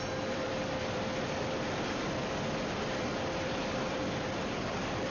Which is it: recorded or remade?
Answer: remade